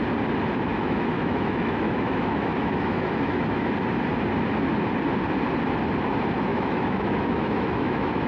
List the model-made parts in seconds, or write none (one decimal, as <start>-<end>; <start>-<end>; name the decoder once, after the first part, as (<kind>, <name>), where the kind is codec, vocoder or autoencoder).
0.7-3.7 (autoencoder, DAC-VAE); 6.5-8.3